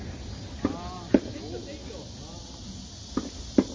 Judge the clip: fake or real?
real